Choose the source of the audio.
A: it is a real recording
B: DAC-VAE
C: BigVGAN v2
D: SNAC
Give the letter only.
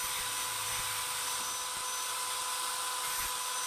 A